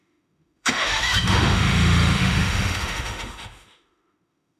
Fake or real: fake